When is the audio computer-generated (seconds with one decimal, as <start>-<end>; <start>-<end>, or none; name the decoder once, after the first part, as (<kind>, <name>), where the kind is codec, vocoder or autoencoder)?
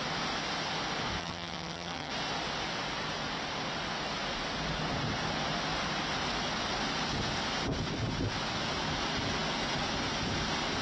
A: 1.2-2.1 (vocoder, HiFi-GAN)